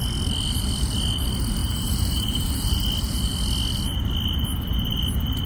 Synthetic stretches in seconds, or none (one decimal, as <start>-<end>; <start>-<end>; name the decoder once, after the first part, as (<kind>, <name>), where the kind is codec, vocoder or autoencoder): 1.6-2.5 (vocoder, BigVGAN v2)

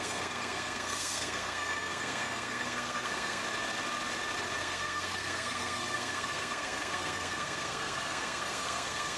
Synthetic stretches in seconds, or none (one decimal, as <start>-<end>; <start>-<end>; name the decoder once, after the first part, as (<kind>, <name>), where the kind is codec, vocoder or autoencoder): 0.0-3.4 (codec, SNAC); 4.6-9.2

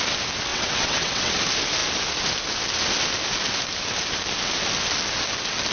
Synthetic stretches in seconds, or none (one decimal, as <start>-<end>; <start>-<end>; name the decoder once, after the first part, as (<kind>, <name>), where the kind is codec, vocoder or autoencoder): 0.5-1.3 (vocoder, WaveNeXt)

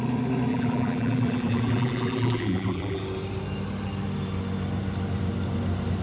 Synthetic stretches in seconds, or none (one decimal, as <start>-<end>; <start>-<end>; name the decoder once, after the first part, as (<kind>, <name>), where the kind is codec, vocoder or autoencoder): 0.5-3.0 (vocoder, BigVGAN v2)

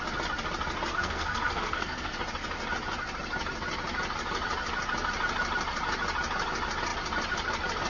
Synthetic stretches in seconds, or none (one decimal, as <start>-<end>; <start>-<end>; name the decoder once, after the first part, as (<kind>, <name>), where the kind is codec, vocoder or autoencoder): 0.9-2.2 (codec, SNAC)

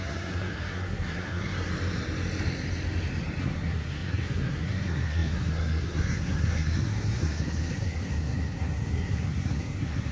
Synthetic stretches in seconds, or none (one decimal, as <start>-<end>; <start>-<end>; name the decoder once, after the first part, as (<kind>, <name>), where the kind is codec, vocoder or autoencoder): 0.0-1.7 (codec, SNAC); 3.4-10.1

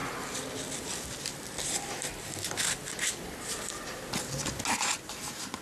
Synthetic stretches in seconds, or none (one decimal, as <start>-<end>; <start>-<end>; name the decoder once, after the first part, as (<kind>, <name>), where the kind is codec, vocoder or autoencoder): none